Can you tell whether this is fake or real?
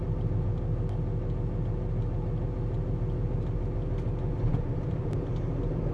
real